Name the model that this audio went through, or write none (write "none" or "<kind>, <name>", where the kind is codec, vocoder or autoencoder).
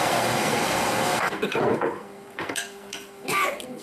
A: codec, SNAC